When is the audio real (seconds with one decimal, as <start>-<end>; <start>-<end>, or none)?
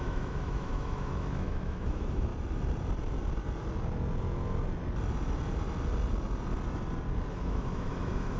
2.3-7.3